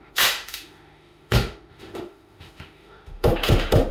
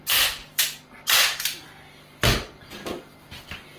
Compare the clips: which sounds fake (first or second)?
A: first